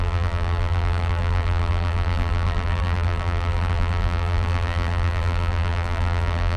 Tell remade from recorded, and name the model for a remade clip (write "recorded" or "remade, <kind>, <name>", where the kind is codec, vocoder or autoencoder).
remade, vocoder, BigVGAN v2